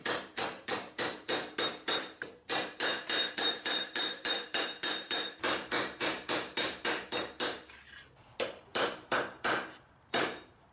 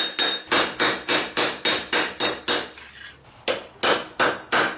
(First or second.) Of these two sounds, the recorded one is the second